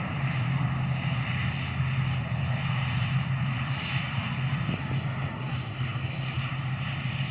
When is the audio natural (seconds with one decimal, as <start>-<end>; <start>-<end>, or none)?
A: 1.4-2.2; 4.2-5.4